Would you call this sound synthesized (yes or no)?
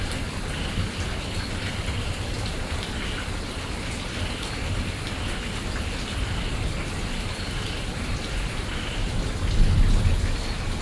no